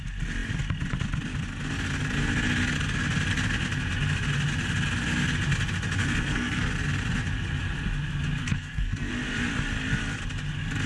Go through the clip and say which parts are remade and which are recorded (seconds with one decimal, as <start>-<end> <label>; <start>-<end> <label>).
0.0-6.0 recorded; 6.0-6.7 remade; 6.7-8.4 recorded; 8.4-9.1 remade; 9.1-10.9 recorded

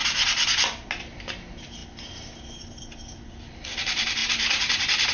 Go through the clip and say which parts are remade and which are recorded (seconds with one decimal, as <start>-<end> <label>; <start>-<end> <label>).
0.0-5.1 recorded

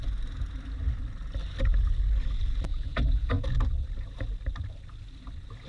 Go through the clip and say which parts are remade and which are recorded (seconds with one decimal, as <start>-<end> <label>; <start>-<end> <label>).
0.0-2.7 recorded; 2.7-3.4 remade; 3.4-5.7 recorded